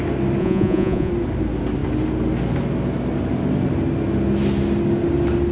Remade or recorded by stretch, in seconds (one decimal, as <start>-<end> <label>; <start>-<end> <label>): 0.0-0.4 recorded; 0.4-1.1 remade; 1.1-5.5 recorded